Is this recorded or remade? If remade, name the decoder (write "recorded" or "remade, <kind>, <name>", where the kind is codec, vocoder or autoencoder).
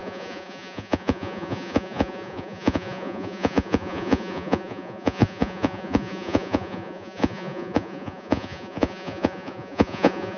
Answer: remade, vocoder, Vocos